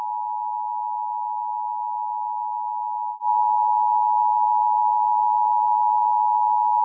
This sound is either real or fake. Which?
real